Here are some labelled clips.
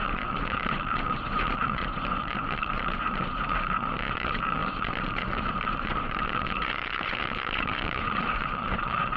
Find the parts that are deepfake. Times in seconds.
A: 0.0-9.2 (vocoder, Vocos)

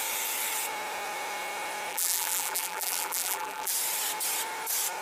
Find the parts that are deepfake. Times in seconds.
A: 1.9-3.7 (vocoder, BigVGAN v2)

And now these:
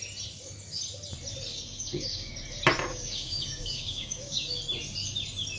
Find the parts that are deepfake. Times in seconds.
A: 1.5-2.3 (codec, DAC); 2.9-4.6